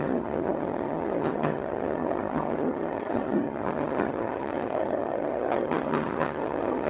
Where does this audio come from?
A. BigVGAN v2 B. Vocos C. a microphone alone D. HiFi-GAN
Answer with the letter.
D